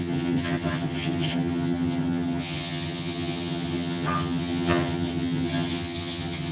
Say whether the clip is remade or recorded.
remade